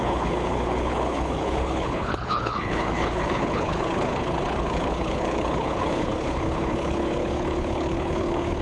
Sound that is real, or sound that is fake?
fake